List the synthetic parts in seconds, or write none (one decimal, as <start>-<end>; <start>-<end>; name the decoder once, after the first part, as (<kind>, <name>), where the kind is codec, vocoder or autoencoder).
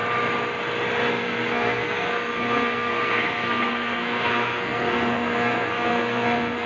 1.1-6.7 (codec, SNAC)